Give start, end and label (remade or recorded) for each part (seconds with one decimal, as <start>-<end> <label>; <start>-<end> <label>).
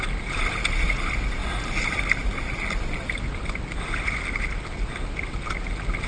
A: 0.0-6.1 recorded